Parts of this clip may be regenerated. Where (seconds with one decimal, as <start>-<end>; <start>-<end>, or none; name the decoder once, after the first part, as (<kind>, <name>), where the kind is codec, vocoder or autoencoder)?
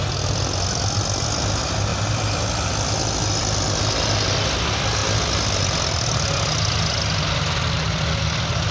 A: none